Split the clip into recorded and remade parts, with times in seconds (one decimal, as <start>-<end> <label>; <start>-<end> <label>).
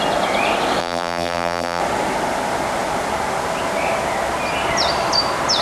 0.0-0.8 recorded; 0.8-1.8 remade; 1.8-5.6 recorded